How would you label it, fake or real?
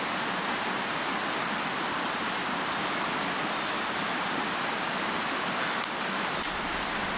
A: real